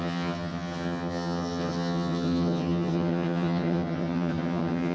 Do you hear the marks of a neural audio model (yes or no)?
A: yes